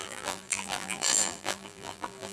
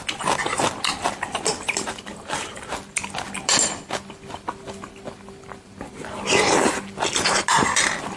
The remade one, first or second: first